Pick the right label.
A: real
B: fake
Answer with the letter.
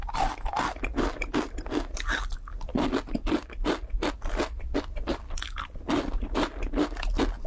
A